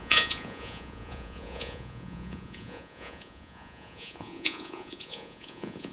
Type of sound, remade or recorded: remade